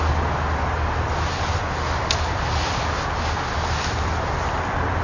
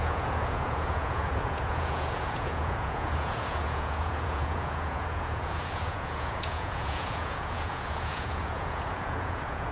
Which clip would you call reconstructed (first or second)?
second